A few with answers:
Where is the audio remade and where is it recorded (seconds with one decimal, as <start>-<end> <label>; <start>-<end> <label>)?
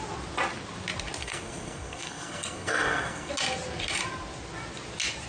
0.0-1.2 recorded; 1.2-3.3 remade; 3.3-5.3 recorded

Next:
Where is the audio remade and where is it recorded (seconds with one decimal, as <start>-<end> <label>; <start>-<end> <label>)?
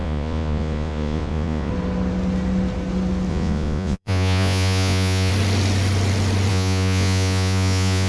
0.0-1.7 remade; 1.7-3.3 recorded; 3.3-5.3 remade; 5.3-6.5 recorded; 6.5-8.1 remade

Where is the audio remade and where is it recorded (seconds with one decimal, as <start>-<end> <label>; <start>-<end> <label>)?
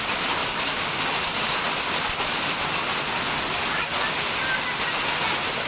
0.0-5.7 recorded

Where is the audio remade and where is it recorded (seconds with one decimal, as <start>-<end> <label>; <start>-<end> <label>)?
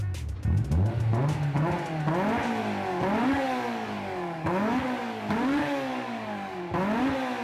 0.0-3.2 recorded; 3.2-6.6 remade; 6.6-7.4 recorded